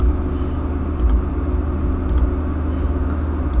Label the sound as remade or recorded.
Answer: recorded